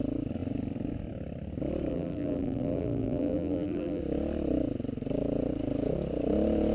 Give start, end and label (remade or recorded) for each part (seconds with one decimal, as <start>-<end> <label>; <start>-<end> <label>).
0.0-1.9 recorded; 1.9-4.0 remade; 4.0-6.7 recorded